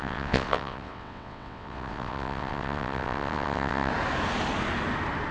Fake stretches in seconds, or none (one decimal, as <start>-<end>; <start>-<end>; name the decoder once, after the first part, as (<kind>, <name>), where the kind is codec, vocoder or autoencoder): 0.0-3.9 (vocoder, WaveNeXt)